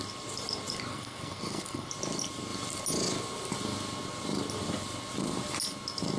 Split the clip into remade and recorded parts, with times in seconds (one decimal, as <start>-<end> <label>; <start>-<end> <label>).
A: 0.0-0.9 recorded; 0.9-1.9 remade; 1.9-6.2 recorded